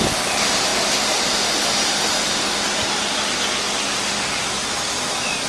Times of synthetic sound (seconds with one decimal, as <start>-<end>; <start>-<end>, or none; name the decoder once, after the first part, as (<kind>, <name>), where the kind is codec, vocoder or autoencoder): none